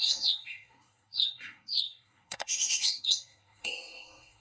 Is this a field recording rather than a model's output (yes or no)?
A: no